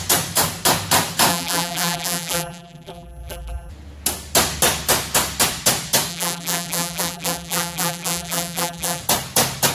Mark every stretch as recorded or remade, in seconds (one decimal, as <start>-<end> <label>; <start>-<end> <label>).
0.0-1.3 recorded; 1.3-3.7 remade; 3.7-6.1 recorded; 6.1-9.0 remade; 9.0-9.7 recorded